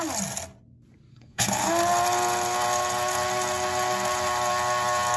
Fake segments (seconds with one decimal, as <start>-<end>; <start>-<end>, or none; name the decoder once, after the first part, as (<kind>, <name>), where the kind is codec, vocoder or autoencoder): 1.1-1.7 (codec, SNAC)